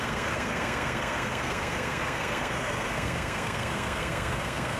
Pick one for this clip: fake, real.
fake